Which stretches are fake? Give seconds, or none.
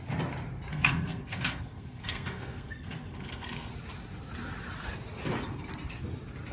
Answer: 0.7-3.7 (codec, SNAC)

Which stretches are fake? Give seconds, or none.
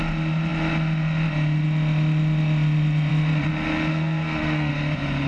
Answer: 3.9-4.7 (codec, SNAC)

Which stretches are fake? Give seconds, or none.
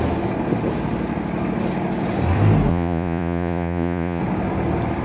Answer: 2.7-4.2 (vocoder, Vocos)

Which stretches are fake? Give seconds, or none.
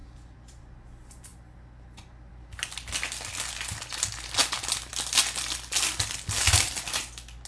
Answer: 0.0-0.6 (vocoder, BigVGAN v2)